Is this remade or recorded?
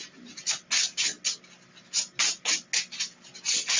recorded